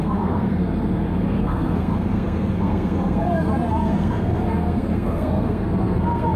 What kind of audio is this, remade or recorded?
remade